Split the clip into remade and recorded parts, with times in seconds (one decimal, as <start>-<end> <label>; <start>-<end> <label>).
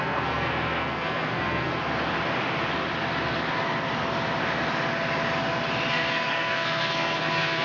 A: 0.0-1.7 remade; 1.7-5.9 recorded; 5.9-7.6 remade